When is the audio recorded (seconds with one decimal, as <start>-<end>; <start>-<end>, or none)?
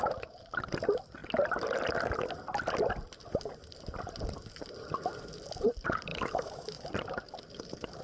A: 0.0-6.1; 6.9-8.0